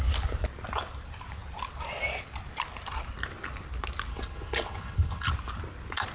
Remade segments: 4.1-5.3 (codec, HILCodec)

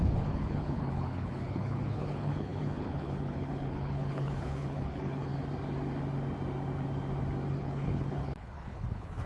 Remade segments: 0.0-5.3 (codec, HILCodec); 7.6-9.3

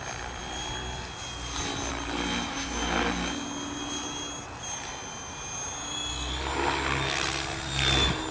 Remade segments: none

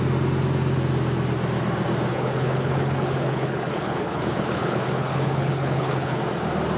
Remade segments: 2.1-6.2 (codec, HILCodec)

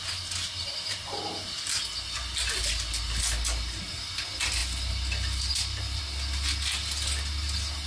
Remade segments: none

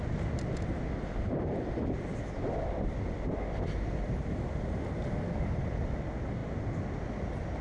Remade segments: none

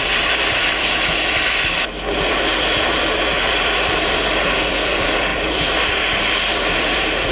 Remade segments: none

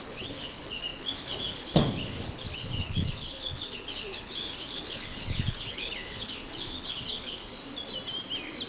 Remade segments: 0.0-7.6 (codec, HILCodec)